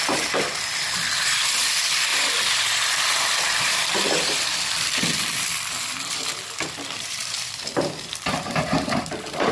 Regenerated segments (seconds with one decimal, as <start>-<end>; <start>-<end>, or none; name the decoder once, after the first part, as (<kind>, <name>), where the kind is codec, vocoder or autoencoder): 0.0-9.5 (vocoder, BigVGAN v2)